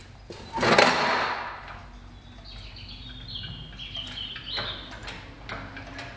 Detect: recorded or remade recorded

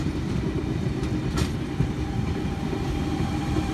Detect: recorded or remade recorded